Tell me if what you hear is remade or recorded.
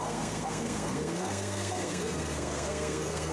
remade